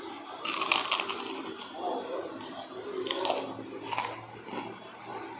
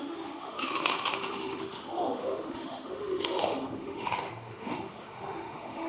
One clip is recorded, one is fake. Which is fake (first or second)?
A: second